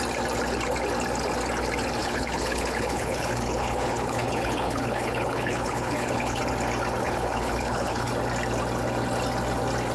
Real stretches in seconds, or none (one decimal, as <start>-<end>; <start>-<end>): 0.0-2.0; 6.4-7.0; 8.1-9.9